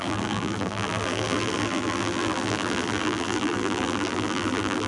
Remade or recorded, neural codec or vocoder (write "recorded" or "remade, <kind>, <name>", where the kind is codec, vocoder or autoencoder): remade, vocoder, BigVGAN v2